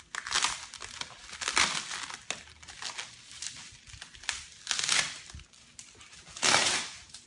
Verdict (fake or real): real